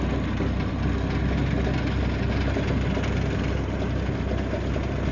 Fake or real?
real